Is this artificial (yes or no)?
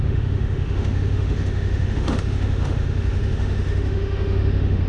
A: yes